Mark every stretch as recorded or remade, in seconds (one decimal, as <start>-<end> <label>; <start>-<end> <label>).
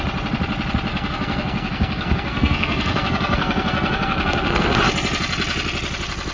0.0-0.9 recorded; 0.9-4.7 remade; 4.7-6.3 recorded